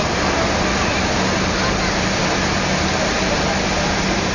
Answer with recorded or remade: recorded